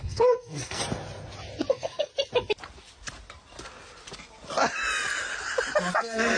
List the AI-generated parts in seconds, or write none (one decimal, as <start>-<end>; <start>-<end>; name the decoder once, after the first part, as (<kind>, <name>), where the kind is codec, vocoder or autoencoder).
0.0-0.8 (codec, SNAC); 1.7-2.1; 5.9-6.4